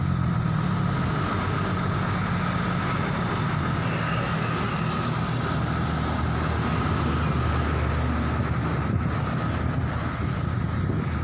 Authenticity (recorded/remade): recorded